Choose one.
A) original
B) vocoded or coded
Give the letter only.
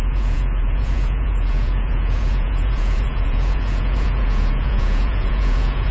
B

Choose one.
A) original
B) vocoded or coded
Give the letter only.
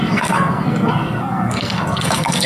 B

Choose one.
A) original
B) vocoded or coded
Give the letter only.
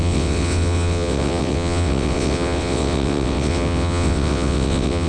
B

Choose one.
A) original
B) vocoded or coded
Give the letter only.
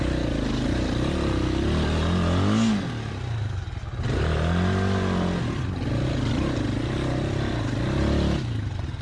A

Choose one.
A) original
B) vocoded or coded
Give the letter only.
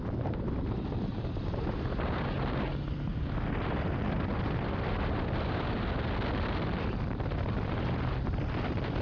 A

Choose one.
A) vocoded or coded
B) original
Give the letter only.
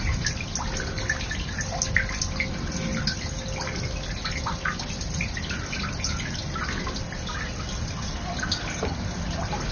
B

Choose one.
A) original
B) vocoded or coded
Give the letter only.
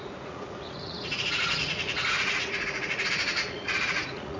B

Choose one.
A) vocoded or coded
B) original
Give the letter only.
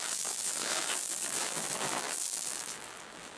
A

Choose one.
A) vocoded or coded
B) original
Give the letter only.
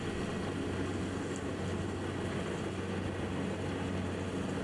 B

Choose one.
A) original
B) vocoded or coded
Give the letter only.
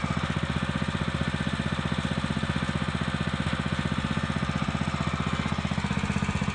A